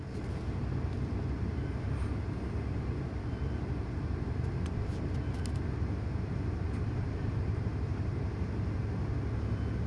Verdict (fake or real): real